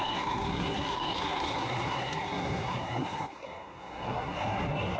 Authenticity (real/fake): fake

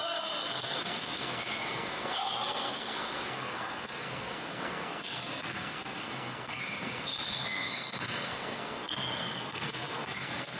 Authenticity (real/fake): fake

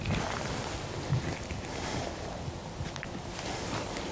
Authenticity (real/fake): real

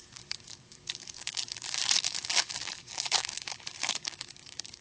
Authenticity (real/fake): fake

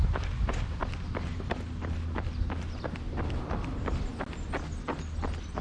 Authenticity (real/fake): real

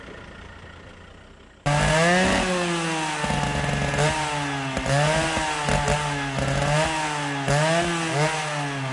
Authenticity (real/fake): real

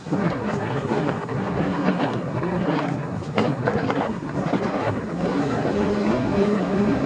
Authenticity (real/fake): fake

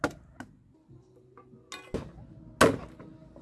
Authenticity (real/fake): real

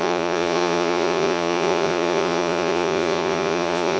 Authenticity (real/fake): fake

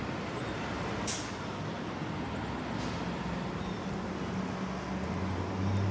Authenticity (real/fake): real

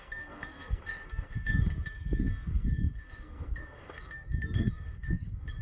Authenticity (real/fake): fake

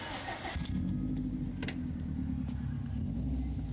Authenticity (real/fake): real